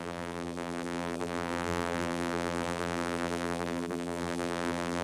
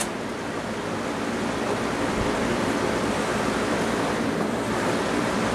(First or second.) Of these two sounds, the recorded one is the second